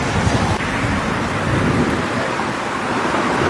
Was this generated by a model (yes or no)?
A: no